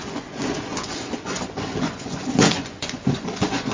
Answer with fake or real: fake